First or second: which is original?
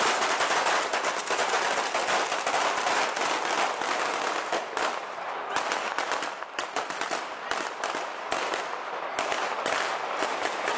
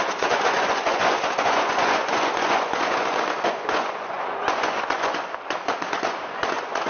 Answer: first